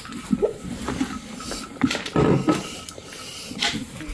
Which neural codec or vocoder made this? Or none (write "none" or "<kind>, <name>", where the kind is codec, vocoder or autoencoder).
none